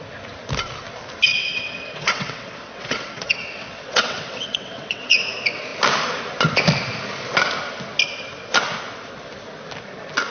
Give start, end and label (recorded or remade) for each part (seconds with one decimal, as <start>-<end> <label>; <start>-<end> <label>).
0.0-1.3 recorded; 1.3-5.2 remade; 5.2-10.3 recorded